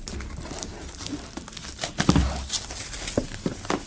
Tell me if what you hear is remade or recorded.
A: recorded